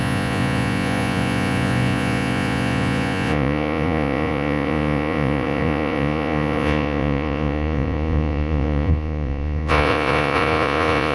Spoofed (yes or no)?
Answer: yes